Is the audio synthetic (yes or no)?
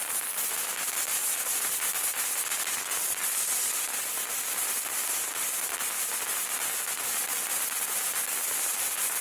no